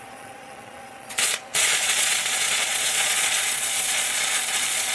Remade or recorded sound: remade